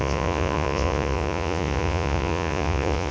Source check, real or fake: fake